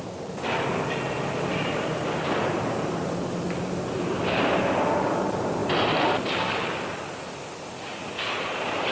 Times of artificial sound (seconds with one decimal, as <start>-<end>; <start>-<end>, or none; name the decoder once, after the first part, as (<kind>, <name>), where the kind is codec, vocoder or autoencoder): 1.5-4.5 (vocoder, BigVGAN v2); 7.9-8.9